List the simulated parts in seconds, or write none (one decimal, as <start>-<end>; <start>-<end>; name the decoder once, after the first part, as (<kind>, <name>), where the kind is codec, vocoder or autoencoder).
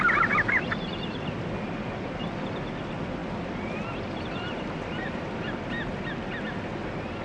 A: 3.2-6.0 (vocoder, BigVGAN v2)